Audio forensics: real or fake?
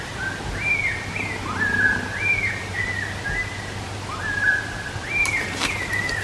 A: real